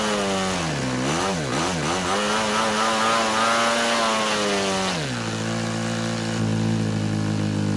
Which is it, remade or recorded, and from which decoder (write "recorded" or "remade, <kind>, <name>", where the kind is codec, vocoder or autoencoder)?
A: recorded